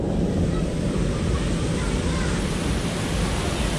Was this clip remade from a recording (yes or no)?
no